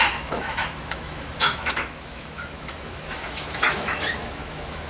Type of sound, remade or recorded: remade